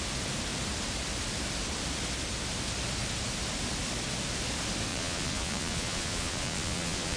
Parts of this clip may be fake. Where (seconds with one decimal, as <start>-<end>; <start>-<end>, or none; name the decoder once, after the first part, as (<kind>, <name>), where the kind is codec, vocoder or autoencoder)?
4.9-7.2 (vocoder, Vocos)